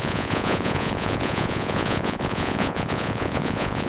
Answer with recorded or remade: remade